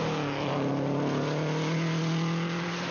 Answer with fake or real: real